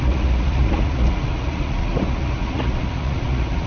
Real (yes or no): no